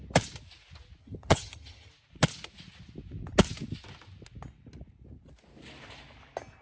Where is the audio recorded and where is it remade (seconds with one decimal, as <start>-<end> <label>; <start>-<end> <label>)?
0.0-1.0 recorded; 1.0-1.9 remade; 1.9-6.6 recorded